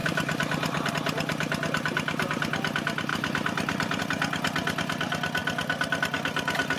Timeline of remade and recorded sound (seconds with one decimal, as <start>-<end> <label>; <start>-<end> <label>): 0.0-0.9 remade; 0.9-3.1 recorded; 3.1-4.0 remade; 4.0-6.8 recorded

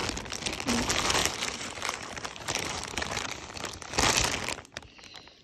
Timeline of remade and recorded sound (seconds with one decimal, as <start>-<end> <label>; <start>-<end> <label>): 0.0-1.2 recorded; 1.2-3.3 remade; 3.3-5.4 recorded

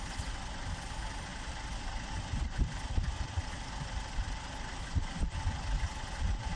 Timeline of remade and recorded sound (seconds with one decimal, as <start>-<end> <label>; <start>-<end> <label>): 0.0-1.3 recorded; 1.3-4.8 remade; 4.8-6.6 recorded

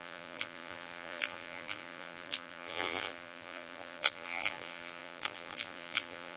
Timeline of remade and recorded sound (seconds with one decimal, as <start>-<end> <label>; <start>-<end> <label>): 0.0-6.4 remade

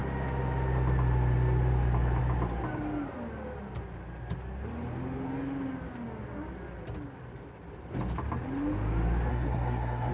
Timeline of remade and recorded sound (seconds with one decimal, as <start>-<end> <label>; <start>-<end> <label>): 0.0-9.3 recorded; 9.3-10.1 remade